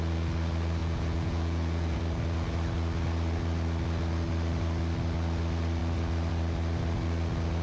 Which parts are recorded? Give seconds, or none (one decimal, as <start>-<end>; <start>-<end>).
0.0-0.8; 2.0-7.6